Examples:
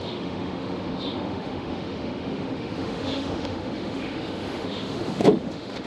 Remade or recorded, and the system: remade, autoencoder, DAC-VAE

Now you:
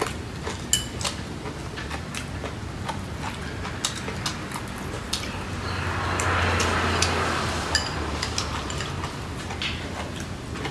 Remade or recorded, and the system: recorded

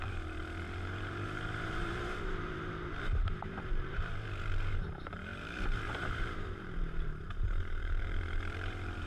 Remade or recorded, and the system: remade, vocoder, BigVGAN v2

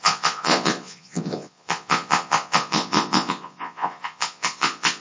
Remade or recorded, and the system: remade, vocoder, Vocos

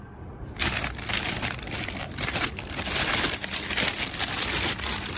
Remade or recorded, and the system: remade, vocoder, BigVGAN v2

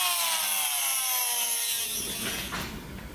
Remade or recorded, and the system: recorded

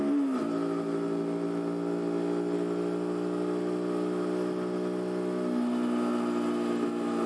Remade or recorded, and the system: recorded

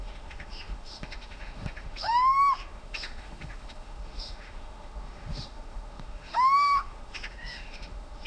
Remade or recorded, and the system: remade, autoencoder, DAC-VAE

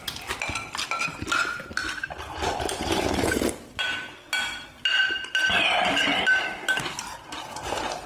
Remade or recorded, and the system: recorded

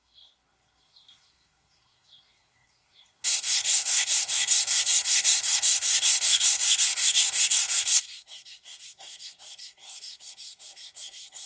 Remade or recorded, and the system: remade, codec, SNAC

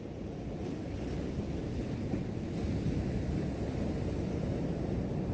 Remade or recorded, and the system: recorded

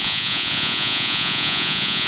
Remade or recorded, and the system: remade, vocoder, Vocos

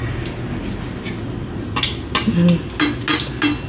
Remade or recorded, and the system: recorded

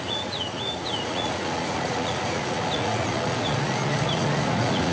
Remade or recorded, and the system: remade, vocoder, Vocos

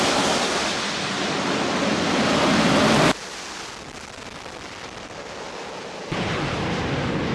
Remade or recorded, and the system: recorded